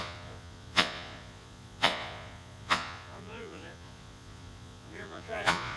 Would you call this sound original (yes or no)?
no